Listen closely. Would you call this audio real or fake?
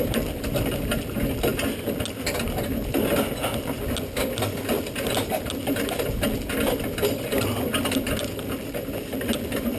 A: real